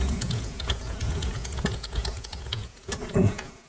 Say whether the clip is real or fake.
fake